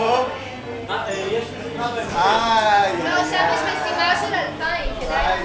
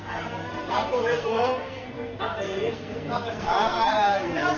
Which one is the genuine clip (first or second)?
first